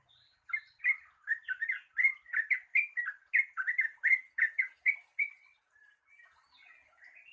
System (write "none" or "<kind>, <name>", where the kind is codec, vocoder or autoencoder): none